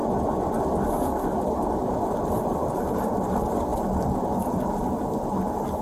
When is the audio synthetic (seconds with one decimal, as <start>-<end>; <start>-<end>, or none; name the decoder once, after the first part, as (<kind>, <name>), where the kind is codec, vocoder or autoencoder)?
none

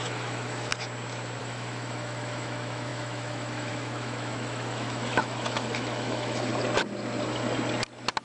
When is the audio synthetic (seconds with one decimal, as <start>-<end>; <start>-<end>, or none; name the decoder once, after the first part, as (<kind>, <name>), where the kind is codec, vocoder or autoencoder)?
0.0-0.7 (autoencoder, DAC-VAE); 1.4-6.5

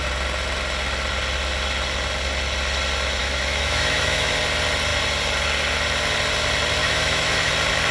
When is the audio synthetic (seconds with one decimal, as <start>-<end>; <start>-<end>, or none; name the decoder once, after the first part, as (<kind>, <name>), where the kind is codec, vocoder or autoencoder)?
3.2-4.3 (autoencoder, DAC-VAE); 6.8-7.5

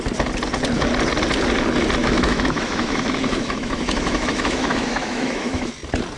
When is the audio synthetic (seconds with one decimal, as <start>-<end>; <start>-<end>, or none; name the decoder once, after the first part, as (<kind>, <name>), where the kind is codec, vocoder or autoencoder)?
2.0-5.7 (autoencoder, DAC-VAE)